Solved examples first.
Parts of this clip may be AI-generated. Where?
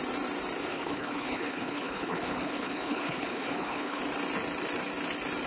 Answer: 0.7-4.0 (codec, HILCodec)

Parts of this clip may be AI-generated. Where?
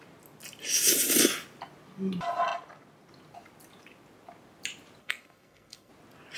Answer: 5.0-5.9 (codec, SNAC)